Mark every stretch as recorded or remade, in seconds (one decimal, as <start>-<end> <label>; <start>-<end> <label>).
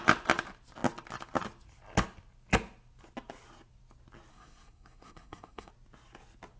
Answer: 0.0-4.3 recorded; 4.3-5.7 remade; 5.7-6.6 recorded